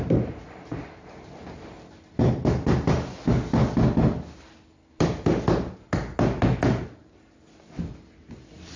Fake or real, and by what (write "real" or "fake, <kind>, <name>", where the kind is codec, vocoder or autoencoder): real